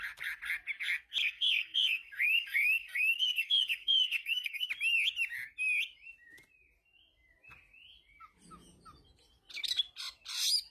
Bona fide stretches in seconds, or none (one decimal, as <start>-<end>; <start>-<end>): 0.0-1.2; 4.7-10.7